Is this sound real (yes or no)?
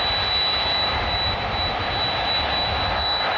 yes